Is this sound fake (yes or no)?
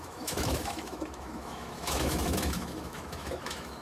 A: yes